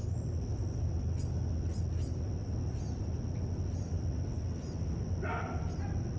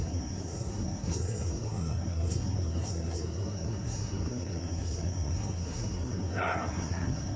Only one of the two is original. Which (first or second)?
first